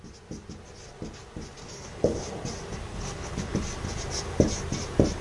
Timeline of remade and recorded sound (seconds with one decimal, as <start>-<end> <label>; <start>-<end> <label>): 0.0-1.6 recorded; 1.6-2.3 remade; 2.3-2.9 recorded; 2.9-3.6 remade; 3.6-5.2 recorded